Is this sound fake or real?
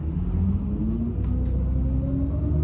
real